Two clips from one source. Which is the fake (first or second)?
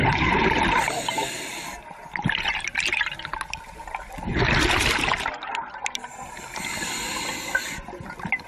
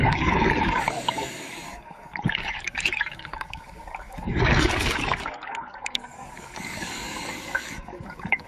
second